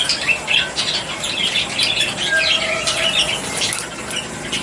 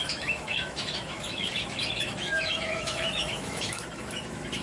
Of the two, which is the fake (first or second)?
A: second